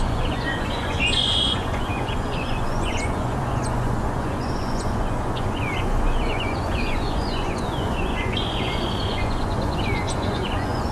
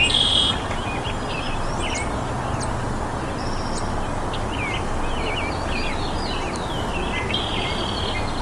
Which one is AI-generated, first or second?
first